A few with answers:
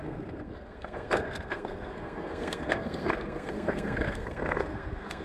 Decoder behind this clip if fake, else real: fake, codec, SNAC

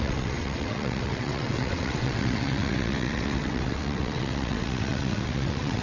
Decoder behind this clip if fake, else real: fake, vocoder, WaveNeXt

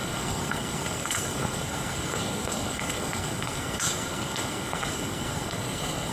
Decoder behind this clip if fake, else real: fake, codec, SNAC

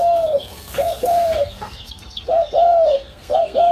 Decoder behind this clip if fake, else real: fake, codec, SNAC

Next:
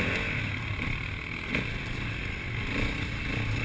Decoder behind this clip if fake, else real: real